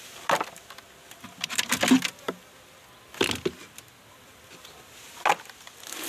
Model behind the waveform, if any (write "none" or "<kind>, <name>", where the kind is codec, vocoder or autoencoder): none